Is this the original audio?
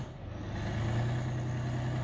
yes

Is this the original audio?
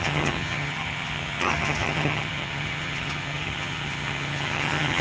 no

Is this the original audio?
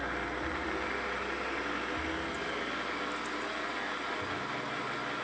yes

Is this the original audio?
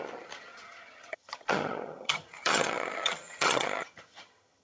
no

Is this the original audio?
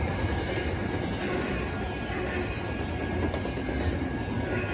yes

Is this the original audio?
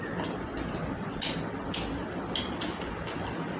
yes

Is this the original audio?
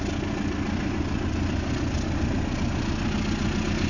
yes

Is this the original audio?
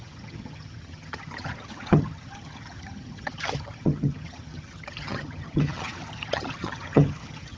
no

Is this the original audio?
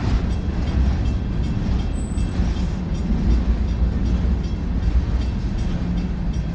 yes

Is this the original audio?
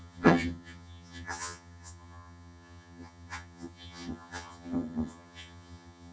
no